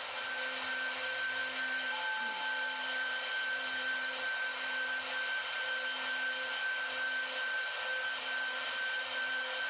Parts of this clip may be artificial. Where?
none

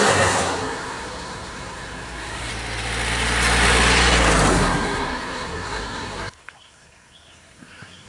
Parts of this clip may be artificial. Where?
0.0-2.5 (codec, SNAC); 4.5-8.1

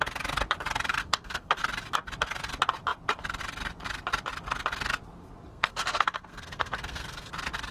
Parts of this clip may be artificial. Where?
1.0-1.6 (codec, SNAC); 5.5-7.3

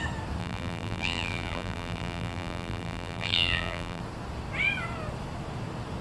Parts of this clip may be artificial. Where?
0.4-4.0 (vocoder, BigVGAN v2)

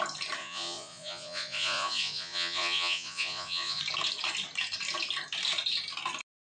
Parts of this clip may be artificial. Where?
0.4-3.8 (vocoder, Vocos)